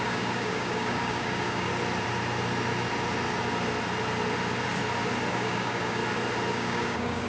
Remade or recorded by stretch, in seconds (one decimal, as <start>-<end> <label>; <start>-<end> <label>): 0.0-1.7 remade; 1.7-5.3 recorded; 5.3-6.0 remade; 6.0-6.5 recorded; 6.5-7.3 remade